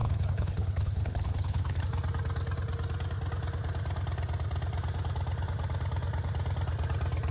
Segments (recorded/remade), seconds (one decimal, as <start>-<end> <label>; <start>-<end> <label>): 0.0-1.8 remade; 1.8-7.3 recorded